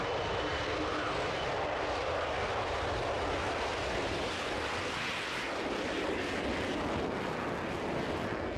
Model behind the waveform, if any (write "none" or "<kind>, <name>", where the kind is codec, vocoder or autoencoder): none